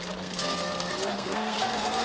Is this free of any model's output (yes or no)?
no